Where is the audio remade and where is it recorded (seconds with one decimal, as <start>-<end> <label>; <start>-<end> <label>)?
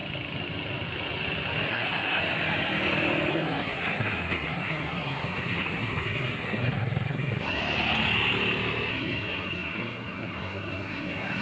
0.0-1.7 recorded; 1.7-2.2 remade; 2.2-3.3 recorded; 3.3-7.6 remade; 7.6-8.9 recorded; 8.9-11.4 remade